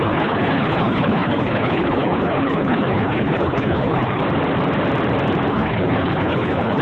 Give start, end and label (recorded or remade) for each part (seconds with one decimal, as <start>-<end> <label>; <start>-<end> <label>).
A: 0.0-4.2 remade; 4.2-5.5 recorded; 5.5-6.8 remade